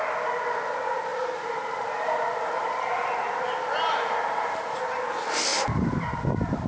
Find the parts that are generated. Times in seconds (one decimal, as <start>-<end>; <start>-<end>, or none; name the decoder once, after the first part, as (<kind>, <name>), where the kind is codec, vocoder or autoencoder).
none